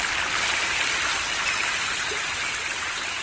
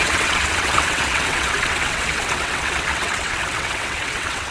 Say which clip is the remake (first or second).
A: second